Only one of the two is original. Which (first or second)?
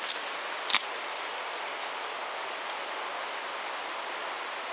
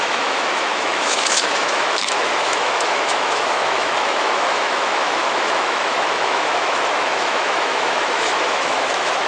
first